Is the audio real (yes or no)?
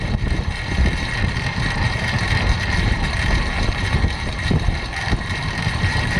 no